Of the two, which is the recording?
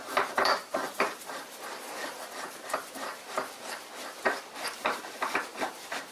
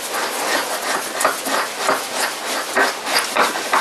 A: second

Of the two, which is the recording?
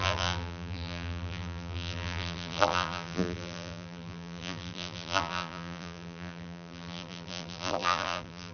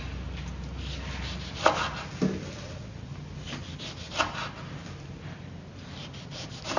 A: second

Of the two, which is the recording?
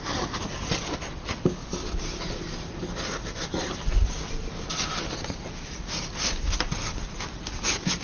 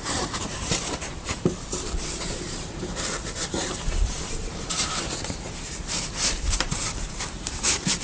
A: first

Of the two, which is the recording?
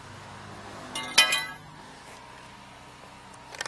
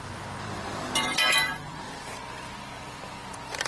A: first